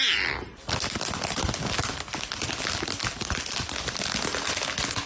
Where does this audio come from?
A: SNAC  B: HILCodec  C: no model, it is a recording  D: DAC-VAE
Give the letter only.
C